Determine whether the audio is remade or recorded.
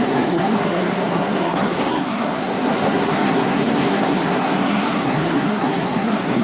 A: remade